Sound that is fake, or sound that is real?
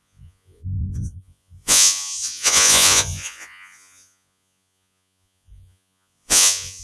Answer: fake